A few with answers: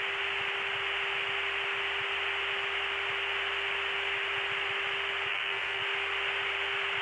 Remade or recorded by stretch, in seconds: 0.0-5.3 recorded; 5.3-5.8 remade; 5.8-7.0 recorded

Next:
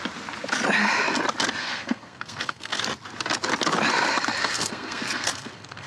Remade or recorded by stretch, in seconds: 0.0-1.6 recorded; 1.6-2.8 remade; 2.8-4.4 recorded; 4.4-5.9 remade

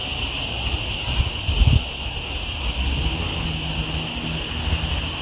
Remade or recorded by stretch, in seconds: 0.0-5.2 recorded

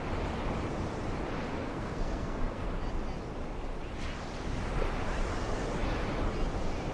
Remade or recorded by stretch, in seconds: 0.0-1.5 recorded; 1.5-2.7 remade; 2.7-6.9 recorded

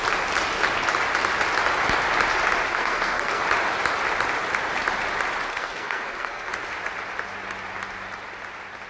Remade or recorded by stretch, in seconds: 0.0-2.7 recorded; 2.7-3.4 remade; 3.4-5.5 recorded; 5.5-6.5 remade; 6.5-8.9 recorded

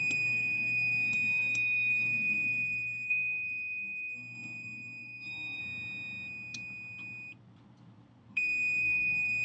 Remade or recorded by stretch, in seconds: 0.0-5.6 remade; 5.6-8.3 recorded; 8.3-9.4 remade

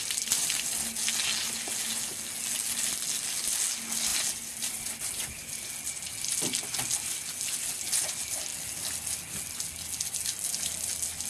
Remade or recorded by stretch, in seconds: 0.0-11.3 recorded

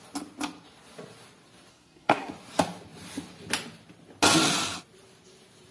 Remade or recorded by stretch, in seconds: 0.0-1.7 recorded; 1.7-2.3 remade; 2.3-5.7 recorded